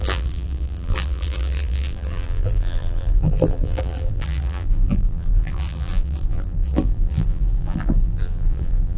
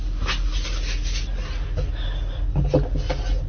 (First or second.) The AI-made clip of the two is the first